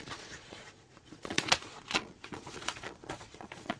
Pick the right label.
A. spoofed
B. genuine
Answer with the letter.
A